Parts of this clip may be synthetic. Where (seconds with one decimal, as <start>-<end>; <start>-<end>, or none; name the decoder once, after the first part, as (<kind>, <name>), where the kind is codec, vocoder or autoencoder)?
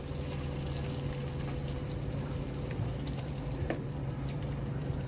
1.6-5.1 (vocoder, BigVGAN v2)